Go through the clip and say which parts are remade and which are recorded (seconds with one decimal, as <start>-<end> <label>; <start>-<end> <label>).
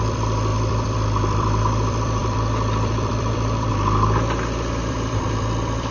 0.0-3.7 remade; 3.7-4.9 recorded; 4.9-5.9 remade